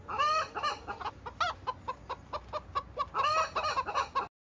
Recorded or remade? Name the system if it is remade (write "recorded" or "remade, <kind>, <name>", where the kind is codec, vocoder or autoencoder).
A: recorded